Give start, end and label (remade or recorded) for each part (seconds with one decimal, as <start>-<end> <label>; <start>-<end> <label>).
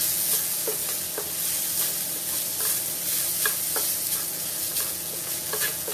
0.0-0.8 remade; 0.8-4.3 recorded; 4.3-5.9 remade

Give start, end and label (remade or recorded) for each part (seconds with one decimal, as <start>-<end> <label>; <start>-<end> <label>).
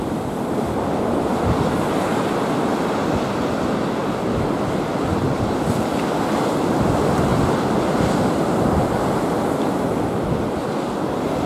0.0-11.5 recorded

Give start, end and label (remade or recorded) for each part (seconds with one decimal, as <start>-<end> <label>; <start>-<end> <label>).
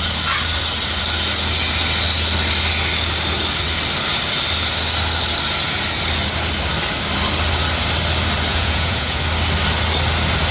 0.0-8.5 recorded; 8.5-9.2 remade; 9.2-10.5 recorded